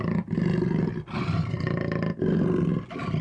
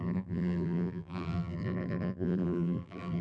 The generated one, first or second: second